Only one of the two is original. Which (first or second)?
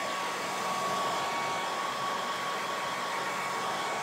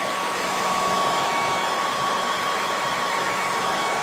first